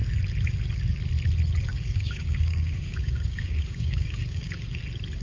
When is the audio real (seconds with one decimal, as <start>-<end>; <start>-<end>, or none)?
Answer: 0.0-1.7; 4.8-5.2